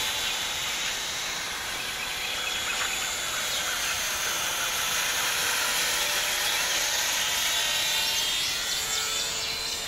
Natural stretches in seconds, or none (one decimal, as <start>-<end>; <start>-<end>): 2.7-3.4